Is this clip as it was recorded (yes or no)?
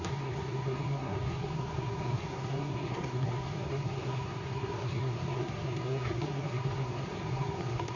no